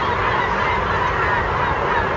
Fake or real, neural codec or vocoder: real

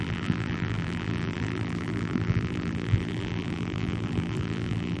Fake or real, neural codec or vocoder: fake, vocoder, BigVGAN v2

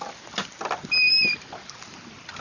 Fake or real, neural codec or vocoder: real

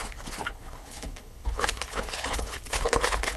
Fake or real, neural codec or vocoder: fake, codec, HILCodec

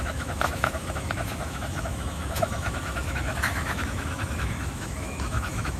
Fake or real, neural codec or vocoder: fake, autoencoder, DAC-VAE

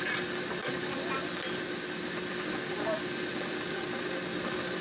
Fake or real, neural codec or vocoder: real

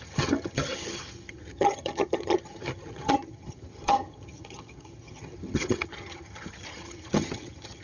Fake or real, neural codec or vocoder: fake, vocoder, HiFi-GAN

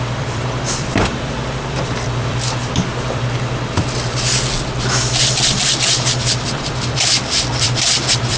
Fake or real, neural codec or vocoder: fake, vocoder, BigVGAN v2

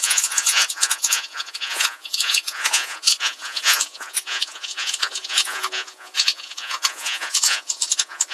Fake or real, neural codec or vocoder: fake, vocoder, Vocos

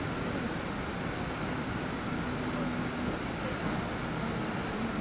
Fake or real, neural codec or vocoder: real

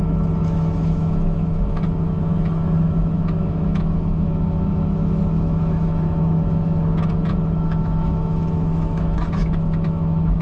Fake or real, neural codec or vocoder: fake, autoencoder, DAC-VAE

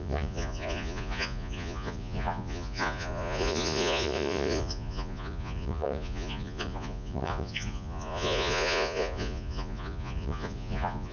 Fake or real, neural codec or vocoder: fake, vocoder, Vocos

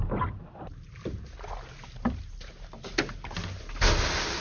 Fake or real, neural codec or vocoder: real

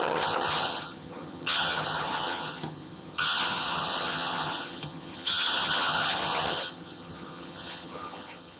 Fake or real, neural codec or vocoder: fake, vocoder, HiFi-GAN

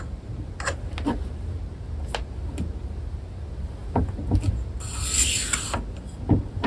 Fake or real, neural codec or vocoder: real